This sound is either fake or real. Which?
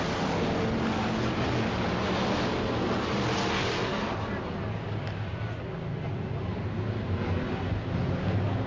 real